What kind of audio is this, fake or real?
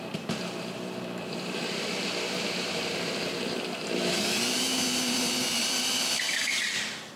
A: fake